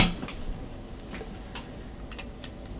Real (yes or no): yes